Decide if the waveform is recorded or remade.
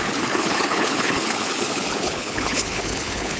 remade